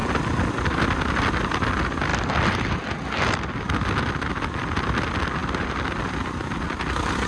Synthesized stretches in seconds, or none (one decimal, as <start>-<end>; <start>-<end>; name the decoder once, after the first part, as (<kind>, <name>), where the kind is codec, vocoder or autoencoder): none